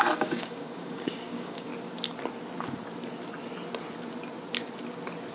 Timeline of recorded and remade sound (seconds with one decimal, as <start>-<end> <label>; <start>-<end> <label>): 0.0-1.7 remade; 1.7-5.3 recorded